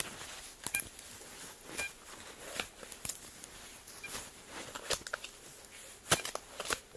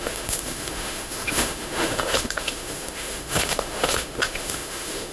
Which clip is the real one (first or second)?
first